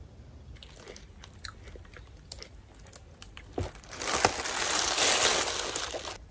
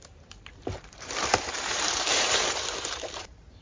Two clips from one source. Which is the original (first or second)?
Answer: first